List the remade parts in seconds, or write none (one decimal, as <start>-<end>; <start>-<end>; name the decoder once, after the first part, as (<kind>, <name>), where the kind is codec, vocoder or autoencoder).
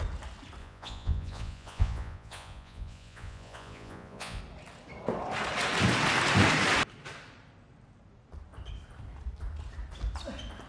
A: 0.6-4.4 (vocoder, Vocos)